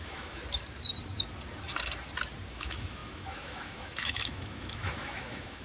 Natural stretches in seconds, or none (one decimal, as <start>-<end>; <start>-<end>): 0.4-2.5